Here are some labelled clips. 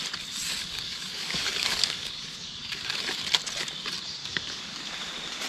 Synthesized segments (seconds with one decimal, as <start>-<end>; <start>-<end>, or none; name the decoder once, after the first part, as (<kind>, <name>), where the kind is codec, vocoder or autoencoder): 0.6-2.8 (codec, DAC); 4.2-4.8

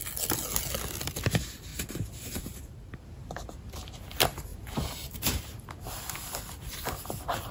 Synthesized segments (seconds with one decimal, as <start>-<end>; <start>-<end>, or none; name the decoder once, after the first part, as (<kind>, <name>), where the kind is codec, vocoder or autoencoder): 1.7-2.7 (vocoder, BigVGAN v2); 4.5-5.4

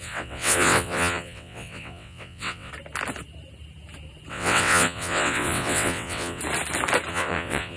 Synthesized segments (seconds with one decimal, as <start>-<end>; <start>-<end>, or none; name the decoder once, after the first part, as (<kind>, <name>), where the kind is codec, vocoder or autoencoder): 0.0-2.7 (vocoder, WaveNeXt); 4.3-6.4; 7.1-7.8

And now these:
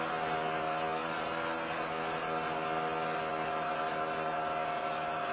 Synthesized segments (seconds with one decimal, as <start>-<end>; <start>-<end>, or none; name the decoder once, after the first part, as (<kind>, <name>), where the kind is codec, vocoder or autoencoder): none

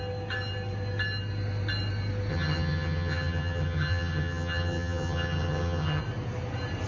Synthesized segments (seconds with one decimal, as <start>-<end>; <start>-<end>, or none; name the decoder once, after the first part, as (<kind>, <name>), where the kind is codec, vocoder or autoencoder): 2.3-6.0 (vocoder, HiFi-GAN)

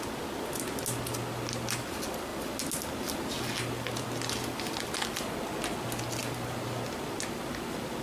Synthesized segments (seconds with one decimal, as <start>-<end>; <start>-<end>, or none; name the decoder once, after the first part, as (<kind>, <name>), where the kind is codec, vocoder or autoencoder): none

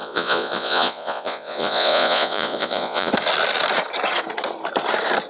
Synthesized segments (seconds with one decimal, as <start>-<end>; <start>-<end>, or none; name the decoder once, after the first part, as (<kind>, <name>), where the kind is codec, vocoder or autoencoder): 0.0-3.1 (vocoder, Vocos)